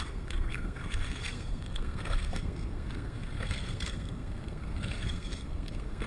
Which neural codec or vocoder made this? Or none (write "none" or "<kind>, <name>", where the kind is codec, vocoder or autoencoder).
codec, SNAC